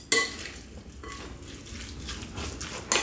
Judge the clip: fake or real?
real